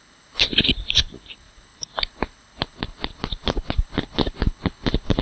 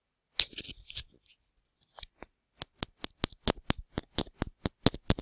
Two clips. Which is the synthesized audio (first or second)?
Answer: first